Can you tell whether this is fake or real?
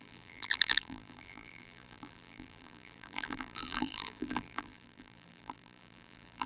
fake